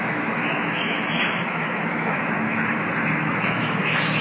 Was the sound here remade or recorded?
remade